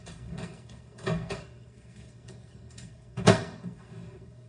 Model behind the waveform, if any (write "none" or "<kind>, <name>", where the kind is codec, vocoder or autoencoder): codec, SNAC